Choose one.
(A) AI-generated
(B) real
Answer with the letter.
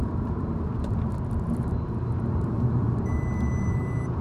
A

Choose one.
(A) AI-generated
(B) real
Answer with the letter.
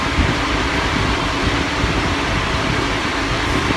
A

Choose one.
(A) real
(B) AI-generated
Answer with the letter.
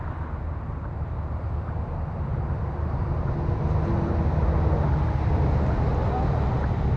A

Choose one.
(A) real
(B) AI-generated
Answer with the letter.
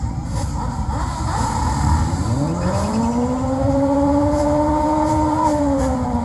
B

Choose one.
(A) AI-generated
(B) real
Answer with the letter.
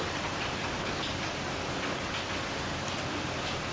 B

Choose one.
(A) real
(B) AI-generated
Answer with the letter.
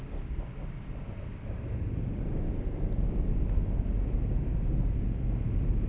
B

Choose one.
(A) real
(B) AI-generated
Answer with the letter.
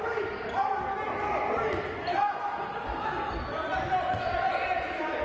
A